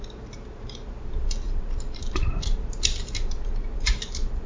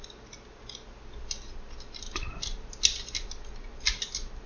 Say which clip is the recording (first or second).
second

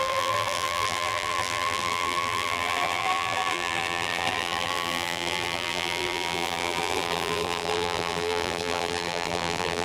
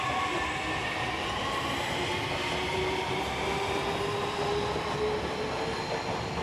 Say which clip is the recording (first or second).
second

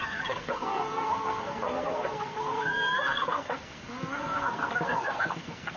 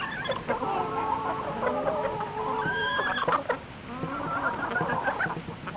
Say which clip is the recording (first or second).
second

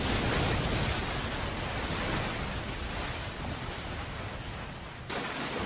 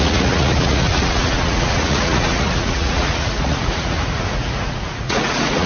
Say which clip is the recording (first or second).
first